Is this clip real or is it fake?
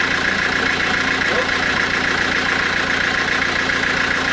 real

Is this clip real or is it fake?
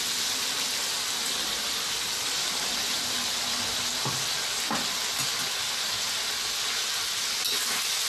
real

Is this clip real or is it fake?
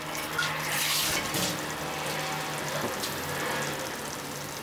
real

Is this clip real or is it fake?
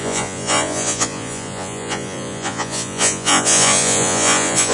fake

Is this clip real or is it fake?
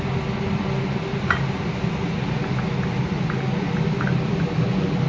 real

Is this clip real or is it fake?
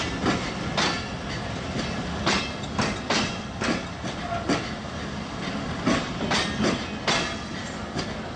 real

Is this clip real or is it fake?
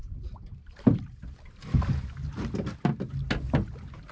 real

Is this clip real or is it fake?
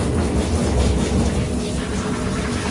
real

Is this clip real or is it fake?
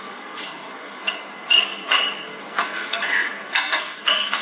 fake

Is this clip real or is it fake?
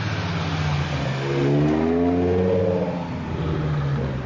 real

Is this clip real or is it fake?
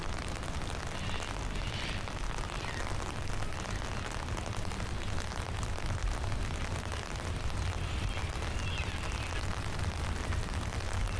real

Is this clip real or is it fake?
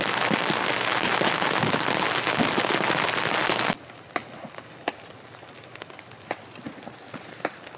real